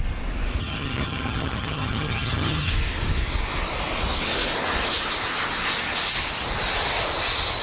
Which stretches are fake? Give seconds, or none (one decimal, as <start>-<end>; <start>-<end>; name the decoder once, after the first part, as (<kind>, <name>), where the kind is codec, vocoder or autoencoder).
0.6-2.7 (vocoder, HiFi-GAN)